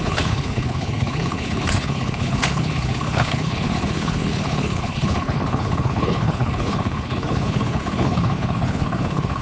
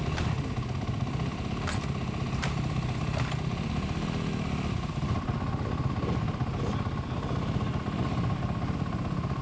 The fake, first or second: first